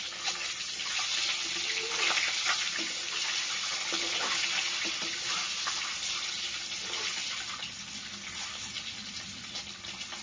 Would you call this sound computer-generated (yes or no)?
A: no